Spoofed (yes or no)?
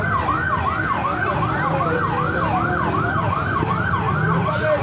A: no